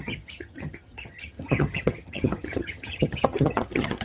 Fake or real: fake